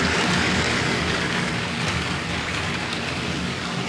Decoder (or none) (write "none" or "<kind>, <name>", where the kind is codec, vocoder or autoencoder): codec, DAC